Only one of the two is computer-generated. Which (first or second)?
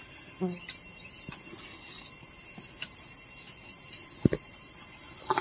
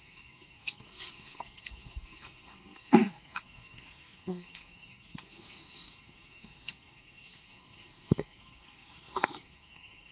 second